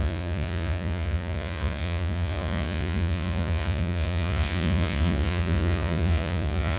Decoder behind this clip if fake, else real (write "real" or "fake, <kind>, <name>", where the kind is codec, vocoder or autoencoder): fake, vocoder, Vocos